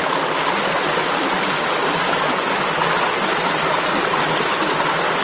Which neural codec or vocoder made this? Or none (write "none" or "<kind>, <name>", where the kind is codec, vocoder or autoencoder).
none